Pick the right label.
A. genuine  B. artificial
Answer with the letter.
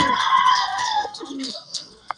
B